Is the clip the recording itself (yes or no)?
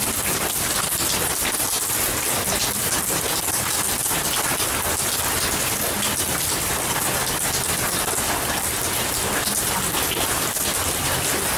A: yes